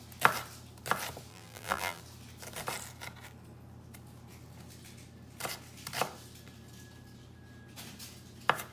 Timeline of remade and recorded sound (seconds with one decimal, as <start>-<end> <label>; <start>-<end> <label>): 0.0-1.3 recorded; 1.3-2.0 remade; 2.0-8.7 recorded